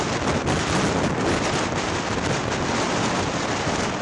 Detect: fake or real real